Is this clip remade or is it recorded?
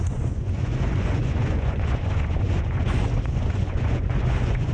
remade